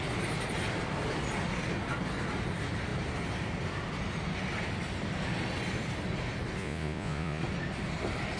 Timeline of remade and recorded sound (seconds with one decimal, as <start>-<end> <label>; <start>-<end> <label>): 0.0-6.6 recorded; 6.6-7.4 remade; 7.4-8.4 recorded